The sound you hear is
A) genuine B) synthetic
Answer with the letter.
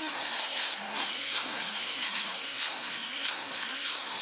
B